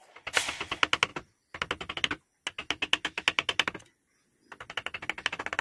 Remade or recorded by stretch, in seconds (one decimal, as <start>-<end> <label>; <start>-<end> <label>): 0.0-5.6 recorded